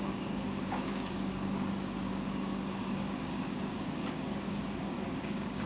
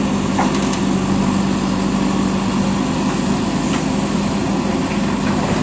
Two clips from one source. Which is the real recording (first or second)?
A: second